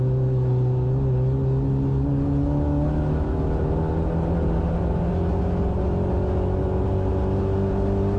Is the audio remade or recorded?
recorded